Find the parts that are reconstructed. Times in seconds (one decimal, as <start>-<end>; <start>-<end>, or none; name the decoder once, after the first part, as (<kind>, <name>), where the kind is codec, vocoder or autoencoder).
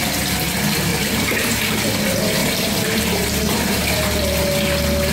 0.9-1.9 (vocoder, BigVGAN v2); 2.4-4.1